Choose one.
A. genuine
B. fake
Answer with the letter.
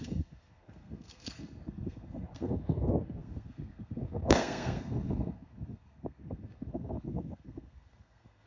B